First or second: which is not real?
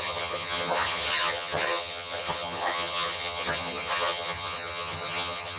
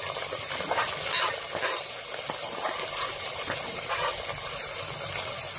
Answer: first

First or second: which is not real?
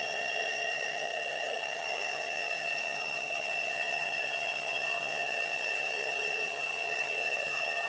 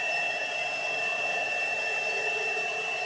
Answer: first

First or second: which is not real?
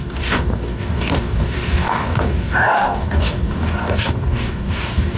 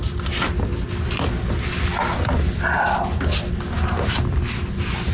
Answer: first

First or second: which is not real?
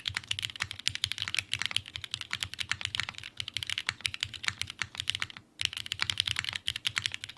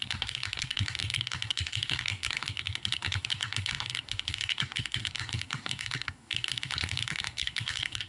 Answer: second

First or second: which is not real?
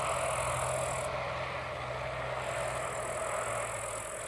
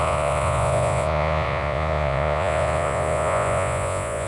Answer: second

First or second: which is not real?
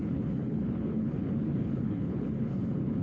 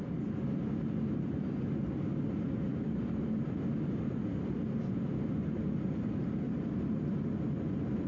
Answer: first